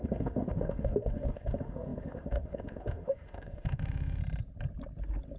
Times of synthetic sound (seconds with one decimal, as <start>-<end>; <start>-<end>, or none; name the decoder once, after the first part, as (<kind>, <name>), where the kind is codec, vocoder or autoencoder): 0.0-4.2 (autoencoder, DAC-VAE)